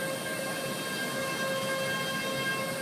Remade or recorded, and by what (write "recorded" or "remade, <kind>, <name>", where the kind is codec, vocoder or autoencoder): recorded